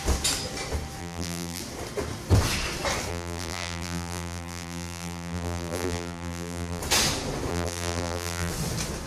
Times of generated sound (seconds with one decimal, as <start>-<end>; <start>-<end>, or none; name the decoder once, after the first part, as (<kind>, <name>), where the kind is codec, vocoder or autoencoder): 1.0-1.6 (vocoder, BigVGAN v2); 3.1-6.8; 7.5-8.5